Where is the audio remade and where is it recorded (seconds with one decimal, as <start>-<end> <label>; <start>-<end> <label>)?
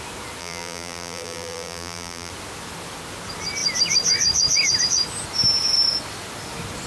0.0-0.4 recorded; 0.4-2.3 remade; 2.3-6.9 recorded